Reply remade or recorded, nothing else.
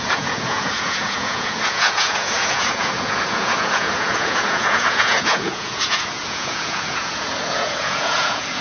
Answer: remade